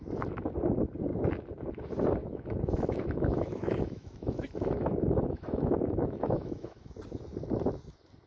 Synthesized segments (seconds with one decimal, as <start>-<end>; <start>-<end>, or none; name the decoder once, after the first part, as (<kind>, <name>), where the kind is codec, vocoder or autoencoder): 2.2-7.0 (autoencoder, DAC-VAE)